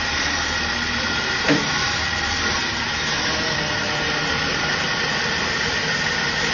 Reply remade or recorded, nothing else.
remade